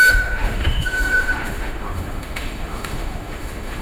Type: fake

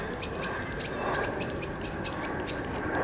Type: real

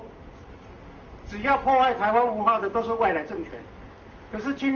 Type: real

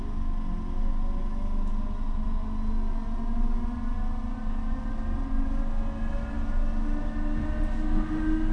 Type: real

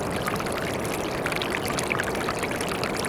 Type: real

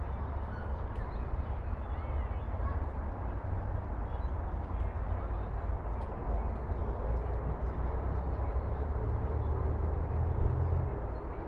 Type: real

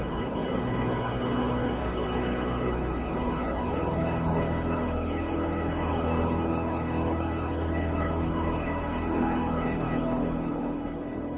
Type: fake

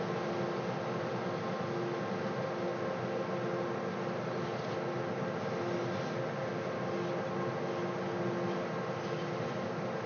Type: real